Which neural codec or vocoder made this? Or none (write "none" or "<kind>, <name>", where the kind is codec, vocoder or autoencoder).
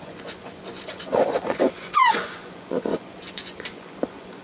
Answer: vocoder, Vocos